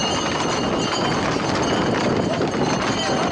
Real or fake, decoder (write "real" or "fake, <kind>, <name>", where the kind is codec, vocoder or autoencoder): real